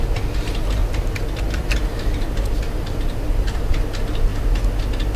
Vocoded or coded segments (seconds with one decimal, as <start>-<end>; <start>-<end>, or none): 0.8-3.9